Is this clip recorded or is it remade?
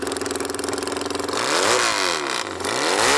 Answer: recorded